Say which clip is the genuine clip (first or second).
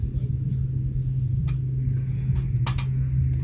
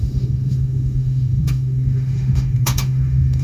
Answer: first